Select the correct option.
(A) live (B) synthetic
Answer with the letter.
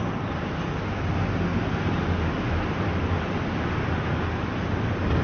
A